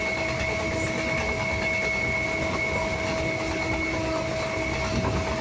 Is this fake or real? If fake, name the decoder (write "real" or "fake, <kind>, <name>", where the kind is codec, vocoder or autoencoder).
real